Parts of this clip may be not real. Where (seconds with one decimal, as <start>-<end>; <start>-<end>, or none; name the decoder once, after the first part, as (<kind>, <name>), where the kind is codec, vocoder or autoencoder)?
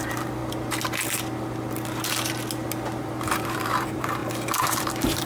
0.0-0.4 (vocoder, BigVGAN v2); 3.0-5.3